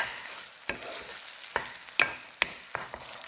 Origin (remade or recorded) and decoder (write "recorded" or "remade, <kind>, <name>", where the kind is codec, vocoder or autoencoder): recorded